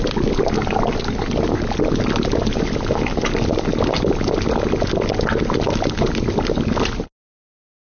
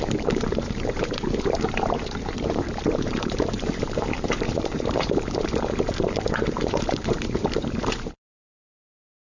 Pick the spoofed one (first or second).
second